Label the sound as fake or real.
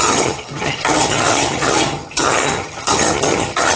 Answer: fake